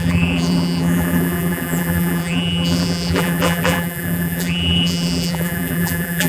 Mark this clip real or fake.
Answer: fake